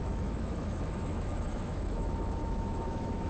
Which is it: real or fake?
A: fake